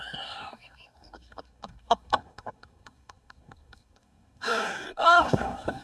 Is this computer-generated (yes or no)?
yes